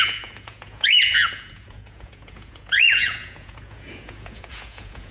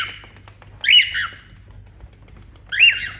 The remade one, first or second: first